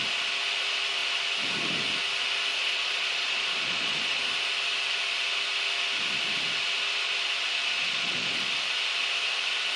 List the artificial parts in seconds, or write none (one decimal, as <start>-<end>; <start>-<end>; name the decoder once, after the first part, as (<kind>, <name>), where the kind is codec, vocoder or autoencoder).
2.5-4.2 (vocoder, Vocos); 7.8-8.4